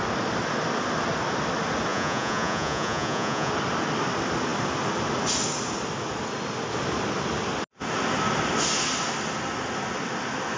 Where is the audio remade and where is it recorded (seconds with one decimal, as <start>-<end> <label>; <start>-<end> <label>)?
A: 0.0-1.9 recorded; 1.9-3.5 remade; 3.5-10.6 recorded

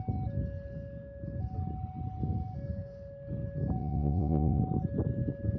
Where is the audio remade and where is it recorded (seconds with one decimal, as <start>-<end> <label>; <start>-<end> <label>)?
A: 0.0-3.8 recorded; 3.8-4.6 remade; 4.6-5.6 recorded

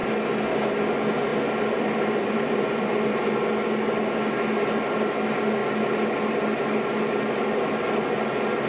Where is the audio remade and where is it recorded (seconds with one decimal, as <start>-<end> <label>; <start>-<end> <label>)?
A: 0.0-1.3 recorded; 1.3-3.3 remade; 3.3-8.7 recorded

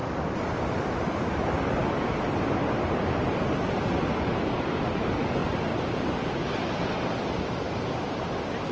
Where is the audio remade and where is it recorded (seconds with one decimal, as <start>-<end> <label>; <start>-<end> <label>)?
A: 0.0-8.7 recorded

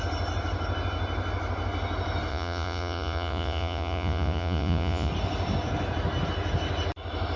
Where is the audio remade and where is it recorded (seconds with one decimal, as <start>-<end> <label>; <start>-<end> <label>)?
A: 0.0-2.3 recorded; 2.3-5.1 remade; 5.1-7.4 recorded

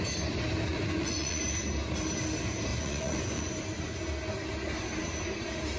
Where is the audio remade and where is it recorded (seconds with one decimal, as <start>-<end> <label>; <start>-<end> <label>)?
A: 0.0-0.7 recorded; 0.7-1.4 remade; 1.4-2.7 recorded; 2.7-3.5 remade; 3.5-5.8 recorded

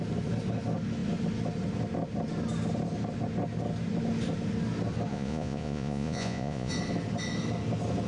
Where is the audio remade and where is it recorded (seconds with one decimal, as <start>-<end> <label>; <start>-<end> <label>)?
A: 0.0-5.1 recorded; 5.1-6.7 remade; 6.7-8.1 recorded